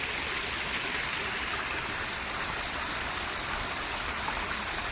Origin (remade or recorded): recorded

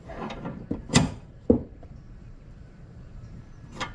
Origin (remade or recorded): remade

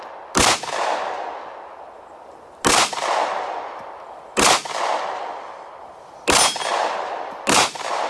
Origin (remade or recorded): recorded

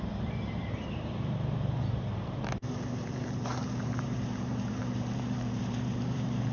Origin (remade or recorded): remade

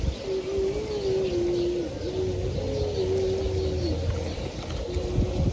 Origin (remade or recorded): recorded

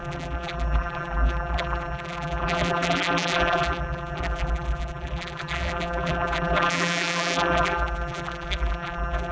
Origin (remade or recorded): remade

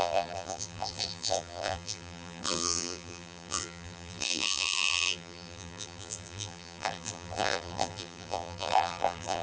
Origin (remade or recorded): remade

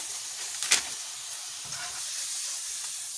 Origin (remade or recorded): recorded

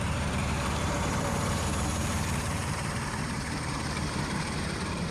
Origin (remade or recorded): remade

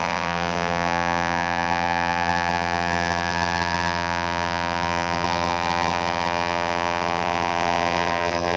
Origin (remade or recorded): remade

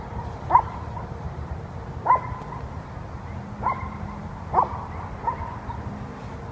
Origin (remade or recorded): remade